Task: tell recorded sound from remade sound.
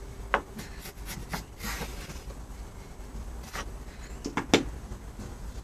recorded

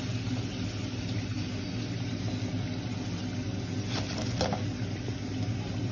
recorded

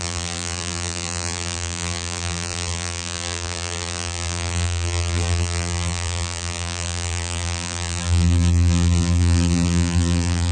remade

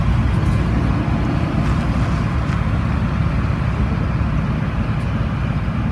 recorded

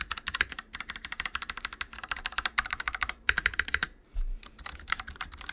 remade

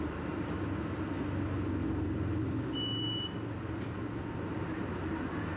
recorded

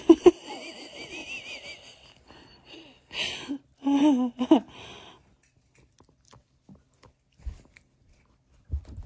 recorded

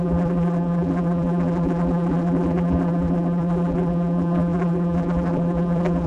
remade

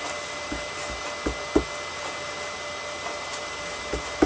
recorded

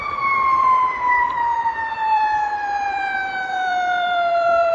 remade